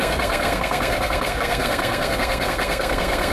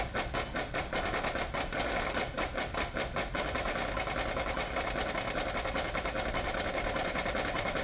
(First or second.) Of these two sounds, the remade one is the first